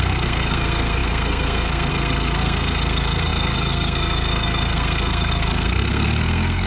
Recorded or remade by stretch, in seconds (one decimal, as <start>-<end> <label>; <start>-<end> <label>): 0.0-6.7 remade